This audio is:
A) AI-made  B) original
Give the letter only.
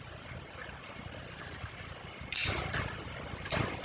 B